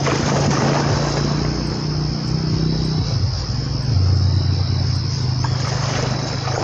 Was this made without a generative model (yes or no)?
yes